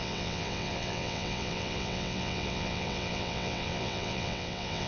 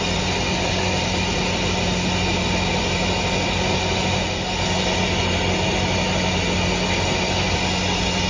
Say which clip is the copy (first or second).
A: first